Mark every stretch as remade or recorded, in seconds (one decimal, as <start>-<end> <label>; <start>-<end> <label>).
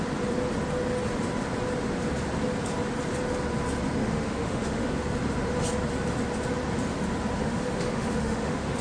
0.0-4.0 recorded; 4.0-4.9 remade; 4.9-7.4 recorded; 7.4-8.8 remade